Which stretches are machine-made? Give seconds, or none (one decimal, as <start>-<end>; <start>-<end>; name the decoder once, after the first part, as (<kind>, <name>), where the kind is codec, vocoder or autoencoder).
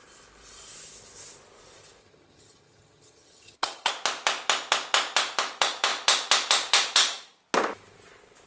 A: 2.0-3.9 (vocoder, HiFi-GAN)